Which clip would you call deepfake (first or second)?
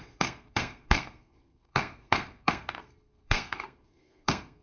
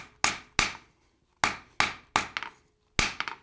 first